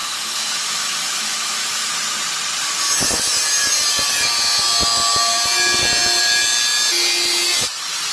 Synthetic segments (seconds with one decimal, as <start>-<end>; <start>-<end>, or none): 0.0-1.9